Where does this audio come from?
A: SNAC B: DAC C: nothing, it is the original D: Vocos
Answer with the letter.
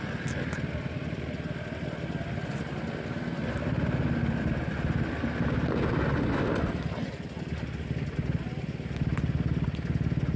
C